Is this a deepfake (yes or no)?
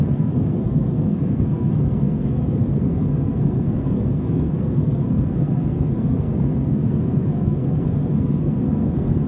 yes